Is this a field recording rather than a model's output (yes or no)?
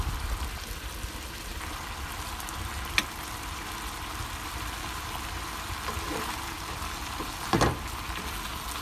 yes